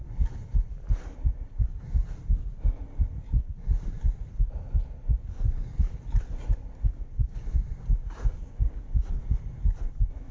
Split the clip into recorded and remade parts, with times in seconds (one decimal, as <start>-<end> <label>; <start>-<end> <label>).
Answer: 0.0-8.3 recorded; 8.3-8.8 remade; 8.8-10.3 recorded